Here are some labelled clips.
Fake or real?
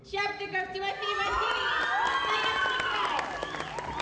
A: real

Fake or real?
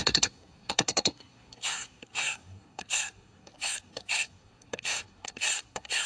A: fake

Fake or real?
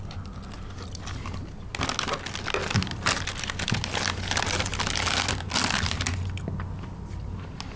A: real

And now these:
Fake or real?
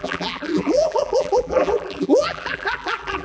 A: fake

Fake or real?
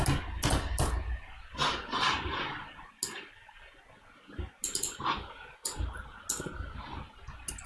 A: real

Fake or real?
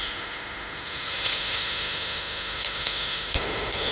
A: fake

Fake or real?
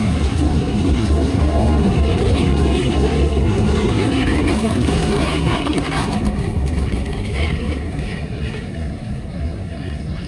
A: fake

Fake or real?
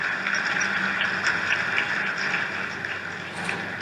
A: real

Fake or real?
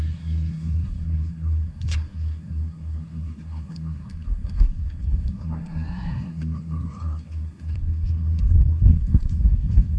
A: fake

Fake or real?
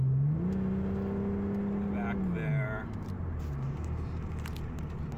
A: real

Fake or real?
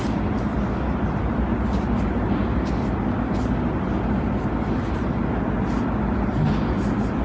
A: real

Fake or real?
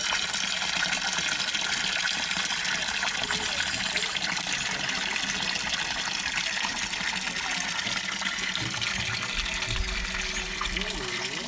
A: real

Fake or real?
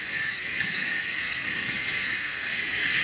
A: fake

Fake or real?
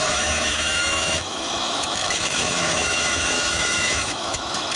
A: fake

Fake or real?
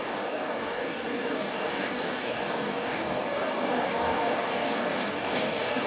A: fake